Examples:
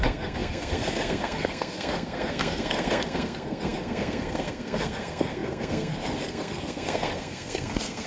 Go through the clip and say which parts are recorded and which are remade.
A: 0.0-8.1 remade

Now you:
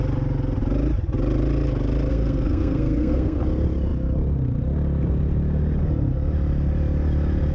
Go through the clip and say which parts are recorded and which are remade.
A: 0.0-2.1 recorded; 2.1-3.4 remade; 3.4-7.5 recorded